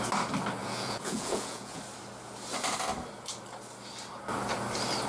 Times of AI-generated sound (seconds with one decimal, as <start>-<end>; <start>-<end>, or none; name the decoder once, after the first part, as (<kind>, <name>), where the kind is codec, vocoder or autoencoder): 0.6-1.8 (vocoder, Vocos)